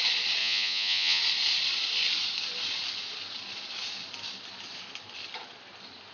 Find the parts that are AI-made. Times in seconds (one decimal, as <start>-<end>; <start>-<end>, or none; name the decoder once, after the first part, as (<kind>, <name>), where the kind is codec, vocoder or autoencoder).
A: 0.4-1.2 (vocoder, Vocos)